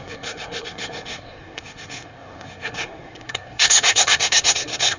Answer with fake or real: fake